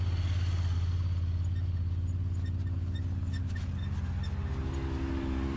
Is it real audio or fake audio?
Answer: real